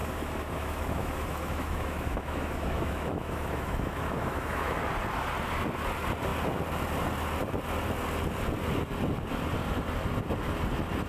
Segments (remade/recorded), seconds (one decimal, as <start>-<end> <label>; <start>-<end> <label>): 0.0-4.8 remade; 4.8-11.1 recorded